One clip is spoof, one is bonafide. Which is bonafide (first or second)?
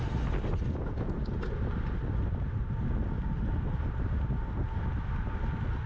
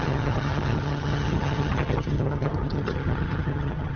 first